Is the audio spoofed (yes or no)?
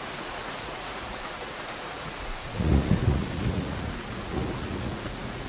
yes